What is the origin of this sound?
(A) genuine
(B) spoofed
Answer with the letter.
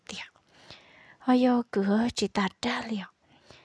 A